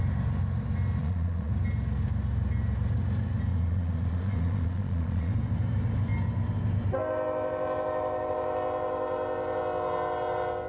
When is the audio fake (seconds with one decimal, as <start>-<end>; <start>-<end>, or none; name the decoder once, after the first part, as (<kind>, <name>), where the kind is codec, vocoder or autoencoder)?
1.0-1.5 (vocoder, Vocos); 3.5-5.3